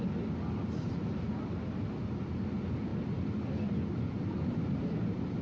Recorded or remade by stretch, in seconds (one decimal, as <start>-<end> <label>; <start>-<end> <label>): 0.0-5.4 recorded